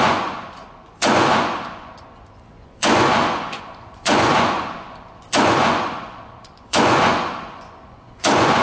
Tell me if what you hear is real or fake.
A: fake